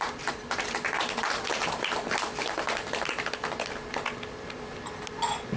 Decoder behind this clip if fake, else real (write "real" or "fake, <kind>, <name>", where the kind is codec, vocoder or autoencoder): real